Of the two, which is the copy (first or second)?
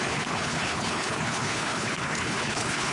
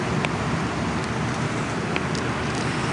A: first